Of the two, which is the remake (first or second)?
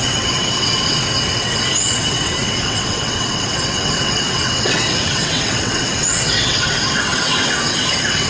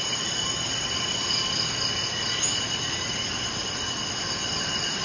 first